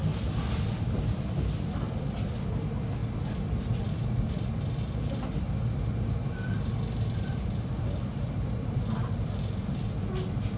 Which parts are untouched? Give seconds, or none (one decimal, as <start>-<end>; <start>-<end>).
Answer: 3.0-6.3